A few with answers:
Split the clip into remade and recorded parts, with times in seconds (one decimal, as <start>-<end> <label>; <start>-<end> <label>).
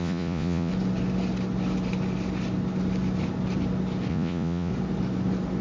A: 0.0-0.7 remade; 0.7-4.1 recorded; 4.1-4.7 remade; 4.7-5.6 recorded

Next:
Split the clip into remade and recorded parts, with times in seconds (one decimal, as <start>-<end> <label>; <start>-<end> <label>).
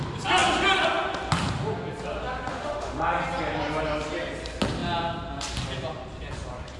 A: 0.0-2.5 recorded; 2.5-3.0 remade; 3.0-6.8 recorded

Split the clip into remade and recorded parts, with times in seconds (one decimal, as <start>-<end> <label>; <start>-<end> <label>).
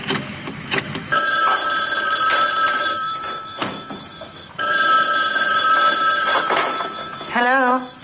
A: 0.0-1.6 remade; 1.6-2.7 recorded; 2.7-8.0 remade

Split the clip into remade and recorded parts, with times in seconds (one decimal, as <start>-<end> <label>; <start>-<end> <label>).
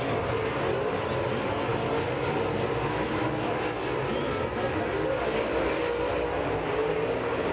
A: 0.0-7.5 recorded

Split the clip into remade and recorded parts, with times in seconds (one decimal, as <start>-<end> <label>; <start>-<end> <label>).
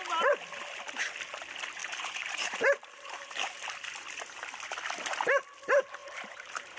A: 0.0-1.8 recorded; 1.8-3.6 remade; 3.6-6.0 recorded; 6.0-6.8 remade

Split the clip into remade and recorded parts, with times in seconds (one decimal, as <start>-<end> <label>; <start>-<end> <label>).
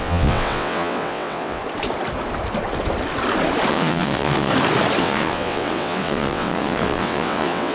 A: 0.0-1.6 remade; 1.6-3.7 recorded; 3.7-4.5 remade; 4.5-5.0 recorded; 5.0-7.7 remade